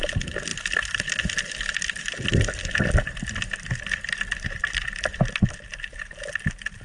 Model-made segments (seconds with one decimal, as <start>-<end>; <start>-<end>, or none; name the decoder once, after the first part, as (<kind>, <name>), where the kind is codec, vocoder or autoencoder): none